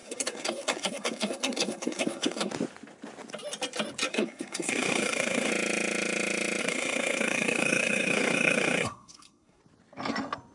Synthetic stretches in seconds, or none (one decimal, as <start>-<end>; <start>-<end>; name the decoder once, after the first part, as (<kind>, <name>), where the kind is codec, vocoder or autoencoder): 0.0-2.5 (codec, SNAC); 4.1-5.5; 6.6-9.6